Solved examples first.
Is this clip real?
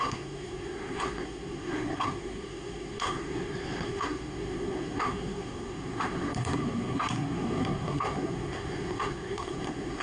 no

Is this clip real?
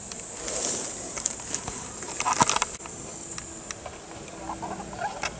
yes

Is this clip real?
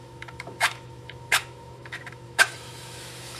no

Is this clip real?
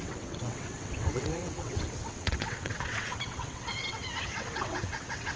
no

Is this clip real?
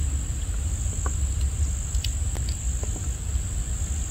yes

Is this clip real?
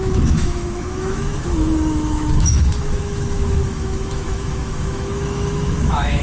no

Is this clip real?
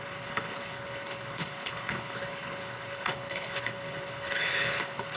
no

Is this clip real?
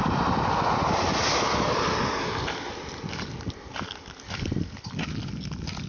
yes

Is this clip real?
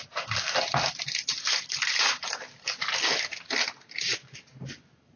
yes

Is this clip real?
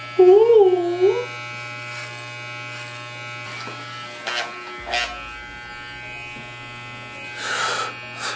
yes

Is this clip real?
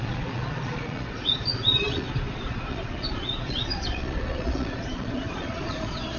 no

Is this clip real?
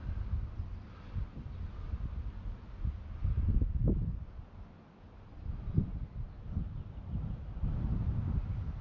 yes